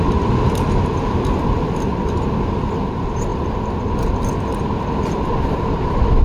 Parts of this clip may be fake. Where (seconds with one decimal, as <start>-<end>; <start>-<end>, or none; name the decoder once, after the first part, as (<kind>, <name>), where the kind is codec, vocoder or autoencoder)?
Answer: none

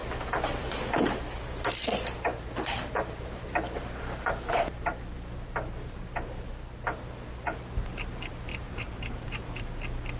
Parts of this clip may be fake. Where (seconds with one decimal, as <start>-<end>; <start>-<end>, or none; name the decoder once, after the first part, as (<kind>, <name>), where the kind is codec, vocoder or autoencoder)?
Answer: 0.0-5.0 (vocoder, BigVGAN v2); 8.5-9.6

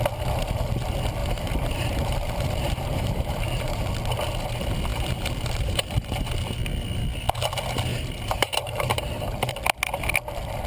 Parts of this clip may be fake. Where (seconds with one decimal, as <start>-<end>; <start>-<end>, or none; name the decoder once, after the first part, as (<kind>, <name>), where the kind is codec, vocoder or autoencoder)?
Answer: 1.2-3.9 (vocoder, BigVGAN v2); 4.9-6.3; 7.9-9.5

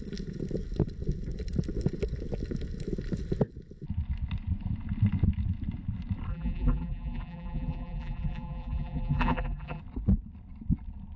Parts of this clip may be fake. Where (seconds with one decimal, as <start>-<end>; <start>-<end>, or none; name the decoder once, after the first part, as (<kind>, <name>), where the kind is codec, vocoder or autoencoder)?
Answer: 6.3-9.8 (vocoder, BigVGAN v2)

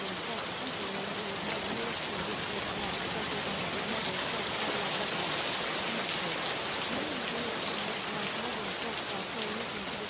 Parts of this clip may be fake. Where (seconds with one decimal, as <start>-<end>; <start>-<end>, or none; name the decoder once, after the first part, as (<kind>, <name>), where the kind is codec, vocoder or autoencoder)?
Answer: none